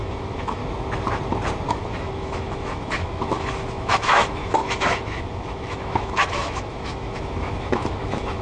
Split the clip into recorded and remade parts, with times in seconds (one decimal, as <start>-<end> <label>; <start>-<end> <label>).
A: 0.0-0.6 remade; 0.6-1.7 recorded; 1.7-8.4 remade

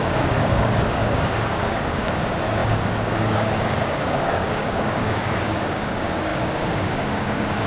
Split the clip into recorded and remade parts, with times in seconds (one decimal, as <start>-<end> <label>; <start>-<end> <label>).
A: 0.0-7.7 remade

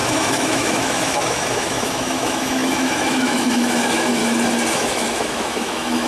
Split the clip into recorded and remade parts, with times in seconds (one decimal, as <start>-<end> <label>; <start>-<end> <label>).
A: 0.0-4.2 remade; 4.2-4.7 recorded; 4.7-6.1 remade

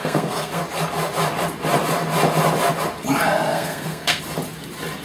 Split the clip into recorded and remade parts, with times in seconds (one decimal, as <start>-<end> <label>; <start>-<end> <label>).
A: 0.0-0.6 remade; 0.6-3.5 recorded; 3.5-4.2 remade; 4.2-5.0 recorded

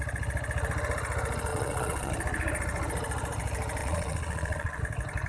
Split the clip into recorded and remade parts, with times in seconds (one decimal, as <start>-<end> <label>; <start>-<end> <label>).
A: 0.0-1.5 recorded; 1.5-2.1 remade; 2.1-3.8 recorded; 3.8-4.8 remade; 4.8-5.3 recorded

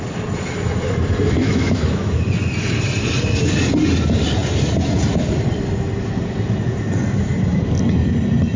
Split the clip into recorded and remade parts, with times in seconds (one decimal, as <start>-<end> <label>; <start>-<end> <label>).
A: 0.0-1.4 recorded; 1.4-2.1 remade; 2.1-8.6 recorded

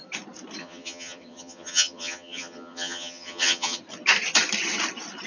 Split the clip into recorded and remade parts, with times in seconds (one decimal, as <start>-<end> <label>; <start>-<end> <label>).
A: 0.0-0.6 recorded; 0.6-3.8 remade; 3.8-5.3 recorded